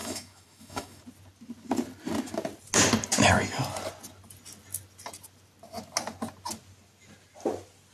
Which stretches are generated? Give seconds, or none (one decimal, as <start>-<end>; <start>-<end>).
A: 0.0-1.0